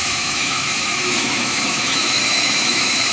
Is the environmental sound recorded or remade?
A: remade